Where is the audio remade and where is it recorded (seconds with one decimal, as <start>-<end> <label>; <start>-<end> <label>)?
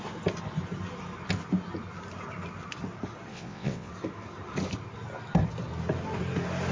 0.0-3.3 recorded; 3.3-3.9 remade; 3.9-6.7 recorded